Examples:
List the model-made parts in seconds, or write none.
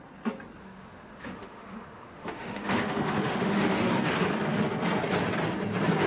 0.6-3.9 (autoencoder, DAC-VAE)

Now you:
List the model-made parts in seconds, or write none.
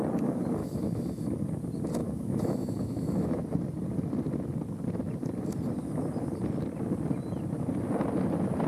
0.6-1.2 (autoencoder, DAC-VAE); 2.0-3.4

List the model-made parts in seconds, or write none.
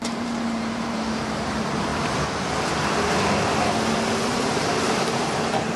0.0-1.9 (vocoder, BigVGAN v2); 4.3-5.8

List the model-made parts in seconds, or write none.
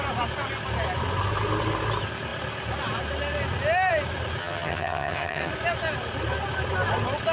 4.4-5.5 (vocoder, HiFi-GAN)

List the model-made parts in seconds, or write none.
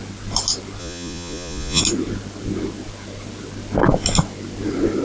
0.8-1.8 (vocoder, Vocos)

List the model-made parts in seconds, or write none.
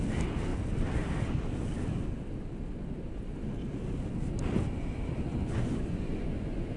5.3-6.8 (vocoder, Vocos)